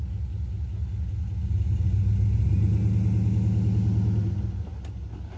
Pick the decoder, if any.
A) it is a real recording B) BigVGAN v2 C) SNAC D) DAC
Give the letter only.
A